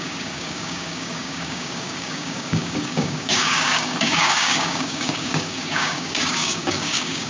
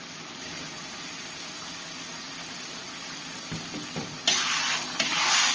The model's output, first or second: first